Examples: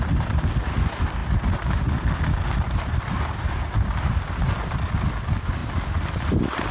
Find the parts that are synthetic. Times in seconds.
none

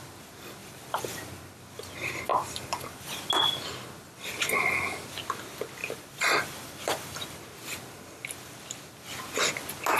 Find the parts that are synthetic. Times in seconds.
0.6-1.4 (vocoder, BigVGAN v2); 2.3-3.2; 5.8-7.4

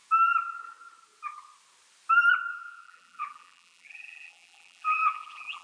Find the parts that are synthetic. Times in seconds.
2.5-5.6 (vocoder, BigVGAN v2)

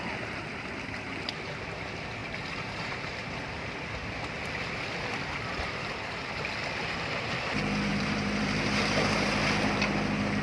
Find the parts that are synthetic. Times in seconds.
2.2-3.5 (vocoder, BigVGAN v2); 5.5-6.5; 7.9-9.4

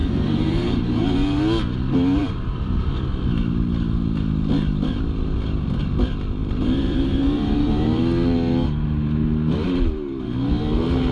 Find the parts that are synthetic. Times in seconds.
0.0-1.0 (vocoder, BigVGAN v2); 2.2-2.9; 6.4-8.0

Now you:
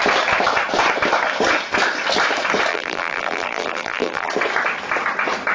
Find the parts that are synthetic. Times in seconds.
2.7-4.3 (vocoder, BigVGAN v2)

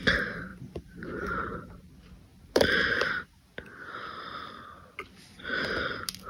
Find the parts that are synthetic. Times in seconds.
0.5-1.8 (vocoder, BigVGAN v2); 2.3-3.5